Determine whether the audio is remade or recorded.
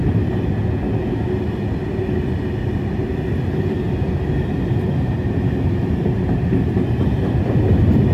recorded